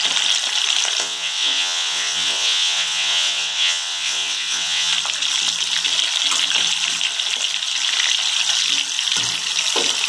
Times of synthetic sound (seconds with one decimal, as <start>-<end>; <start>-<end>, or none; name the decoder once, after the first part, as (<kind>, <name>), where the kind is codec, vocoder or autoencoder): 1.0-4.9 (vocoder, WaveNeXt)